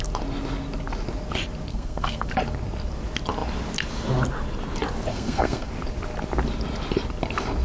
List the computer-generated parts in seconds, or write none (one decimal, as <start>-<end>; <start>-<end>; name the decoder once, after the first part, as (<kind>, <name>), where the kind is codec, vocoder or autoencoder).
1.7-2.3 (codec, SNAC); 5.1-5.7